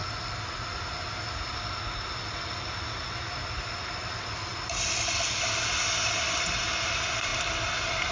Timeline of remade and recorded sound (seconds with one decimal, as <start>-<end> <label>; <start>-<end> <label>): 0.0-8.1 recorded